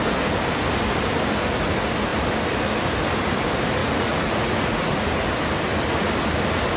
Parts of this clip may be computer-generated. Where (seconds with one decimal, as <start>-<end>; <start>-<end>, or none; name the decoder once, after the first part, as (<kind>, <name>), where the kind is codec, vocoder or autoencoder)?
3.8-5.1 (vocoder, Vocos)